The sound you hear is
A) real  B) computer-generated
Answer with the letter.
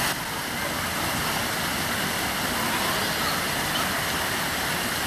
A